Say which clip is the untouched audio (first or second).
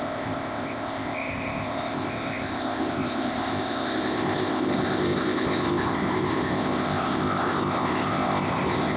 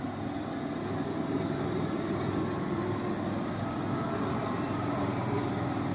second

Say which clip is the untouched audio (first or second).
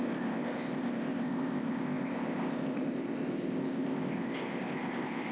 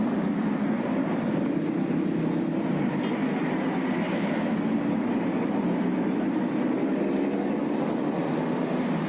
second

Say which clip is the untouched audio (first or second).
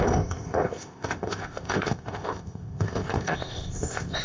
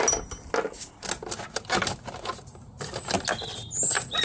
second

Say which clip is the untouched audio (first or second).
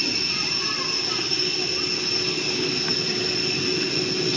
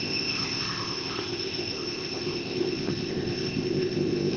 first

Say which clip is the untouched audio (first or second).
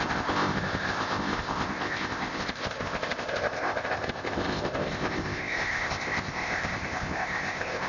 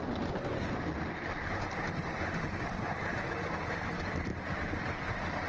second